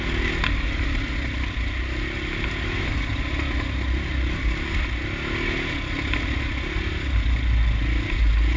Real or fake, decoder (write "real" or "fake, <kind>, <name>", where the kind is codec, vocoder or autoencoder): real